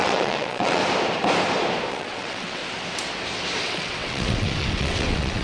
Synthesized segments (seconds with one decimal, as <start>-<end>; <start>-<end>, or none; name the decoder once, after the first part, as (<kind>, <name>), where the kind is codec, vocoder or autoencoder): 0.0-0.8 (vocoder, WaveNeXt); 1.9-2.6; 3.6-5.4